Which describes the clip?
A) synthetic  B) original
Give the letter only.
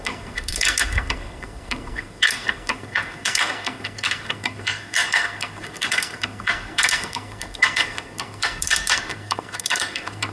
A